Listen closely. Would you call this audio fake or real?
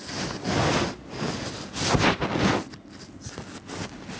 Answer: real